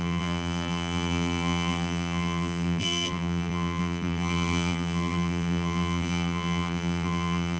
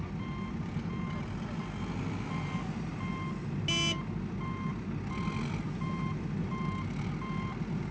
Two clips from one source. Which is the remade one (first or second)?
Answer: first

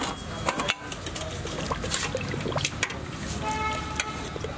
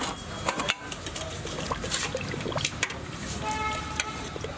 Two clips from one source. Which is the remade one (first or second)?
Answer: second